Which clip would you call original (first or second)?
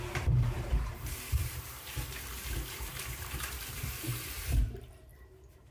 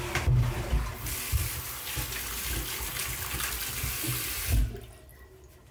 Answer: second